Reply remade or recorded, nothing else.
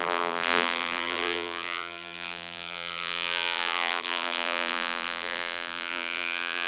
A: remade